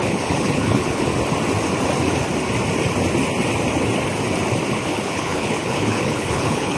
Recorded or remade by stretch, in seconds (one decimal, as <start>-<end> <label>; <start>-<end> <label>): 0.0-1.1 remade; 1.1-4.7 recorded; 4.7-6.8 remade